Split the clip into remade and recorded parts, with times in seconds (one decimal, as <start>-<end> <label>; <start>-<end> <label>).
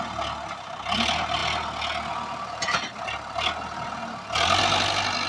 0.0-5.3 recorded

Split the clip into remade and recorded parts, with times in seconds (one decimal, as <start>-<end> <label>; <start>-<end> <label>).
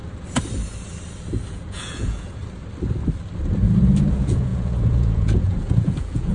0.0-1.5 recorded; 1.5-2.4 remade; 2.4-4.1 recorded; 4.1-6.3 remade